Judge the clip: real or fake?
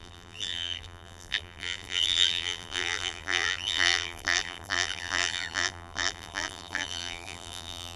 fake